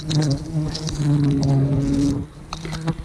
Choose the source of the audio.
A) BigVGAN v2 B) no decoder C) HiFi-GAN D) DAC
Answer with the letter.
B